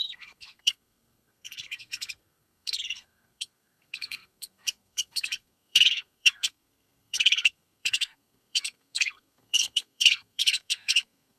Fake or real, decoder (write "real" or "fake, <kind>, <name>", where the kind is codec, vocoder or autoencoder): fake, codec, SNAC